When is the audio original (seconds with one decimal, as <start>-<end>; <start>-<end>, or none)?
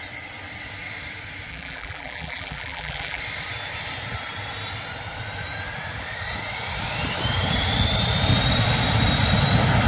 0.0-1.5; 3.2-9.9